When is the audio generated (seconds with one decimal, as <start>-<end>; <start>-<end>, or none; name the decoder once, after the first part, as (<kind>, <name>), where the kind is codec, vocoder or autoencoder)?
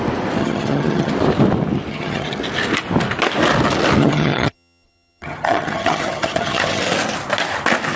0.4-1.1 (vocoder, HiFi-GAN); 1.9-2.4; 4.0-6.8